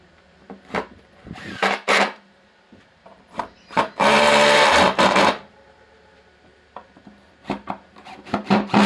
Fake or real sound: fake